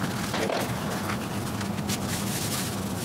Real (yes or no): yes